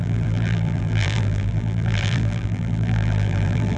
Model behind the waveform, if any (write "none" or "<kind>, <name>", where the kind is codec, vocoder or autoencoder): vocoder, BigVGAN v2